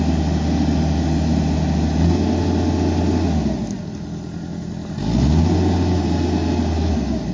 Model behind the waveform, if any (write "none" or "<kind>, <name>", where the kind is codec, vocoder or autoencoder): none